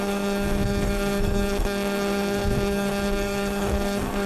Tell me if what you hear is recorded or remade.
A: remade